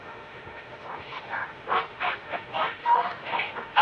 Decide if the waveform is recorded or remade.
remade